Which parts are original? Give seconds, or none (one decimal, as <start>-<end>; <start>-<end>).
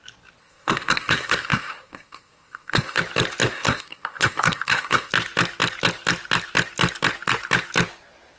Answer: 0.0-0.4; 3.0-3.5; 5.1-8.4